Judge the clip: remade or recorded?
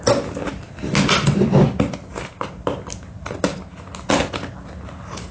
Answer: recorded